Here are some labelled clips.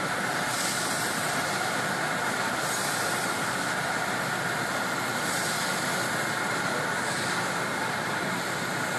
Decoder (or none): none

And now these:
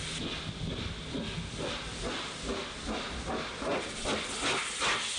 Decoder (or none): none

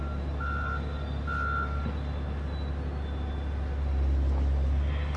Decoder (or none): none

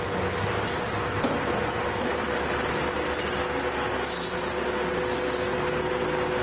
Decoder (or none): none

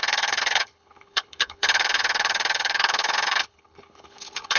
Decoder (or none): codec, HILCodec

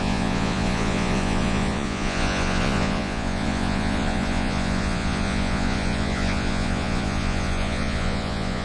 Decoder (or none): vocoder, Vocos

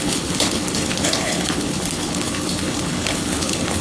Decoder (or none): codec, HILCodec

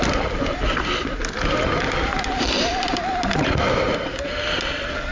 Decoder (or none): none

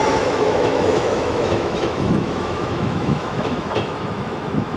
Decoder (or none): autoencoder, DAC-VAE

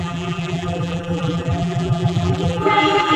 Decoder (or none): vocoder, BigVGAN v2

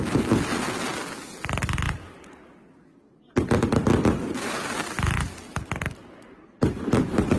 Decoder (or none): none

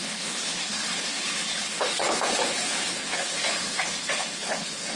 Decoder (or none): codec, HILCodec